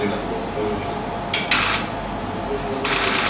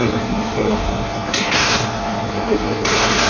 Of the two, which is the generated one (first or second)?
second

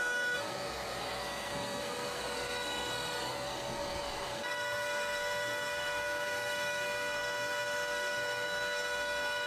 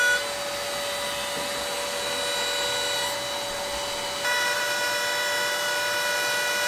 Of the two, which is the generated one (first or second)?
first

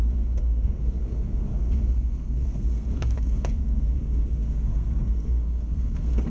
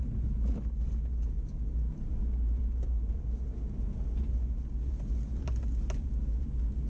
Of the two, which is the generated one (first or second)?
first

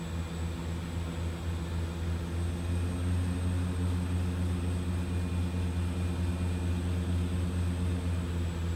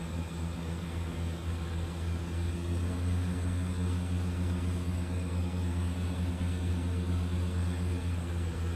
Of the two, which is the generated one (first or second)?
second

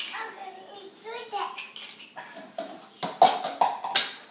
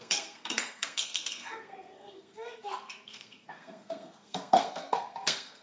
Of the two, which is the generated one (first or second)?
second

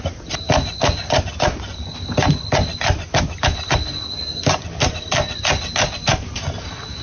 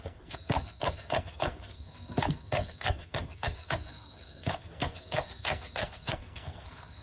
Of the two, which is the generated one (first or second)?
second